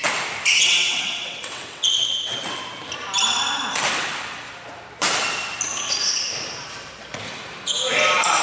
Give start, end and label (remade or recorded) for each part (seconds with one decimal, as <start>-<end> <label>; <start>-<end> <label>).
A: 0.0-0.6 recorded; 0.6-2.6 remade; 2.6-8.4 recorded